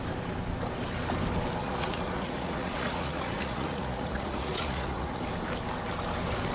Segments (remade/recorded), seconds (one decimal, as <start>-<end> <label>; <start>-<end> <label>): 0.0-1.6 recorded; 1.6-5.2 remade; 5.2-6.5 recorded